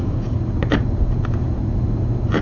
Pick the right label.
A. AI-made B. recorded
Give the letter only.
A